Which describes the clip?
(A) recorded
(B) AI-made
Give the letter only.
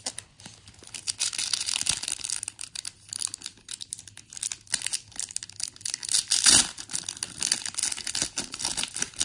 A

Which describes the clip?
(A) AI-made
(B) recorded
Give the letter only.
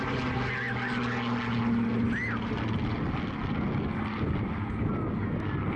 B